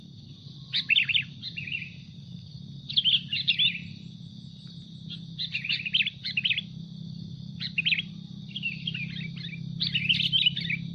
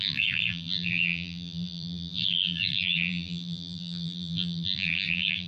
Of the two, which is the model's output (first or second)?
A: second